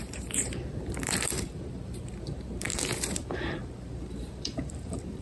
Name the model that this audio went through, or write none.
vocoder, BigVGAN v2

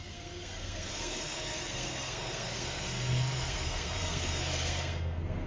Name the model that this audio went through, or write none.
codec, SNAC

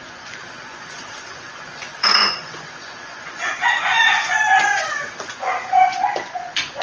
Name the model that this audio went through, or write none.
vocoder, Vocos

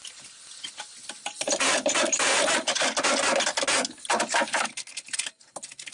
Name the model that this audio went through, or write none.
none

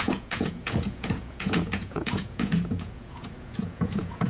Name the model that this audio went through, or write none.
vocoder, Vocos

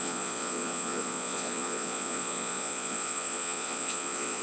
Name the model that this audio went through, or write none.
vocoder, Vocos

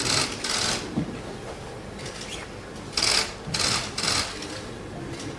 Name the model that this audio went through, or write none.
none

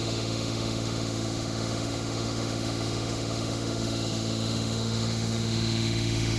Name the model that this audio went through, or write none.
autoencoder, DAC-VAE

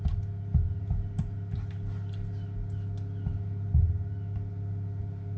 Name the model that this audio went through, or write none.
none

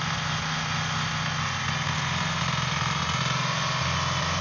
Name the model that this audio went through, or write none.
none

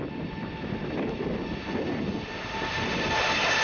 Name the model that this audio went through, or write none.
none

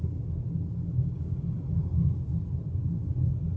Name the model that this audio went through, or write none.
none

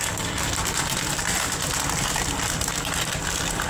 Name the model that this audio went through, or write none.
vocoder, BigVGAN v2